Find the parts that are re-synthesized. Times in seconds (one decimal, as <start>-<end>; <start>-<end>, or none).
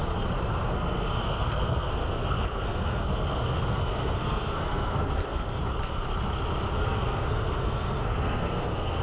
0.4-5.6; 6.7-9.0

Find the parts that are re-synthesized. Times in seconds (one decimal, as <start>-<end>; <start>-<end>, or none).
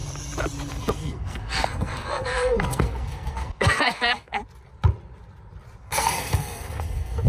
0.7-4.4; 5.8-7.3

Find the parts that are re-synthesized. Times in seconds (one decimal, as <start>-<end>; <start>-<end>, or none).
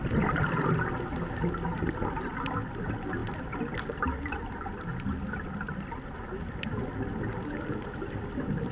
none